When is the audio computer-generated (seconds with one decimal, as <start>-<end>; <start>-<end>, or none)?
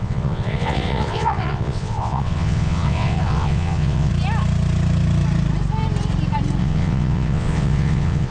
0.0-4.1; 6.6-8.3